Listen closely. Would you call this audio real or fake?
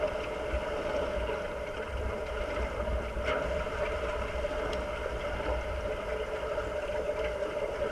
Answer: real